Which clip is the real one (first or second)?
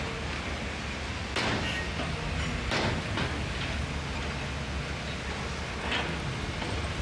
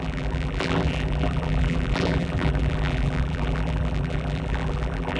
first